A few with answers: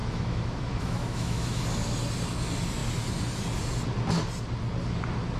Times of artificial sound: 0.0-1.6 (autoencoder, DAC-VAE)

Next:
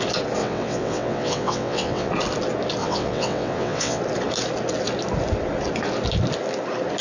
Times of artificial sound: 0.4-2.1 (vocoder, WaveNeXt); 2.8-4.0

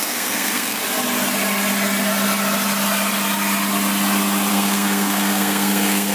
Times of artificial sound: 0.0-0.8 (codec, SNAC); 4.5-6.1

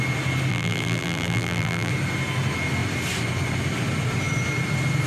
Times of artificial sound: 0.5-1.9 (vocoder, BigVGAN v2)

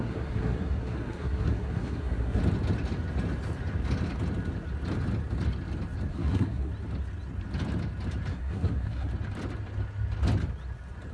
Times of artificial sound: 0.0-2.4 (codec, SNAC); 6.1-6.7; 8.3-9.1

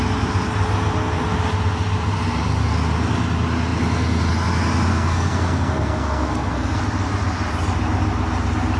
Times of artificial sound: 4.9-6.8 (codec, SNAC)